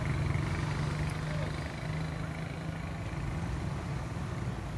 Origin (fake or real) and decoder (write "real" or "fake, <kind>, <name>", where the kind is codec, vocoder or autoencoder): real